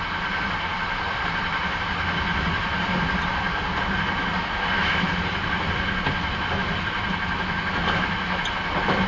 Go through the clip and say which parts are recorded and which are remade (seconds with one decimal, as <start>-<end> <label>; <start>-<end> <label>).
0.0-9.1 recorded

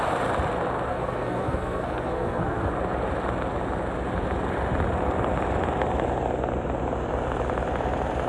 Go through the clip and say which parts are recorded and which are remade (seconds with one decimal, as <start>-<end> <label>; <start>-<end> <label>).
0.0-0.9 recorded; 0.9-2.7 remade; 2.7-8.3 recorded